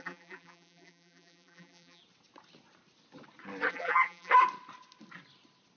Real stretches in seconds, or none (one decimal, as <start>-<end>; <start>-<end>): 2.0-3.7; 4.3-5.8